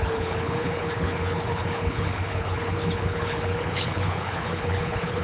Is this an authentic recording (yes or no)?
no